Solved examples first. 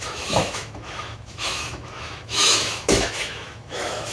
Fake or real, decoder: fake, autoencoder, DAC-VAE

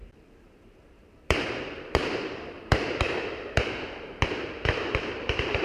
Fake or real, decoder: fake, vocoder, BigVGAN v2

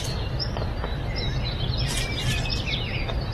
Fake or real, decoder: real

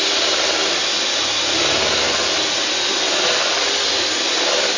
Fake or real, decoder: real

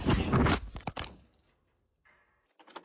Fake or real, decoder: real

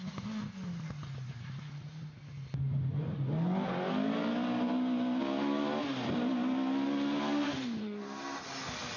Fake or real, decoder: real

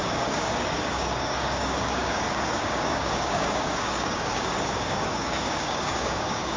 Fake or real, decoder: fake, codec, DAC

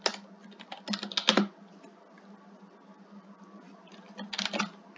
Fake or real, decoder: real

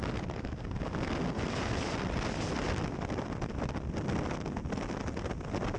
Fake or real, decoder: real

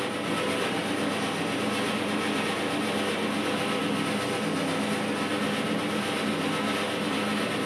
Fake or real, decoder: real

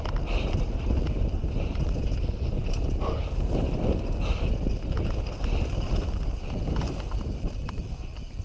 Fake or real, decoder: real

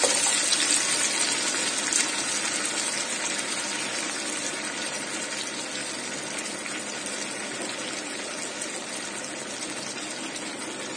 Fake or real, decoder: real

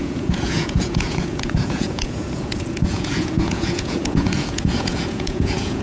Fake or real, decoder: fake, vocoder, Vocos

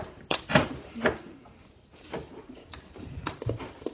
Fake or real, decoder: fake, vocoder, BigVGAN v2